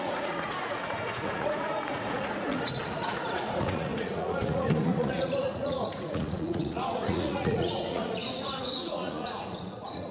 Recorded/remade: remade